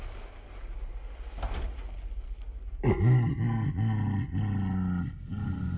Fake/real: real